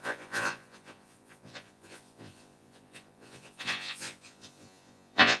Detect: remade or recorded remade